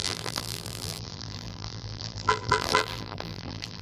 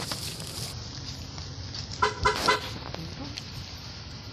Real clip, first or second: second